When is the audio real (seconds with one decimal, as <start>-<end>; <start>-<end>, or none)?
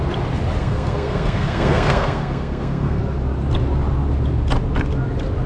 0.0-0.6; 3.0-5.5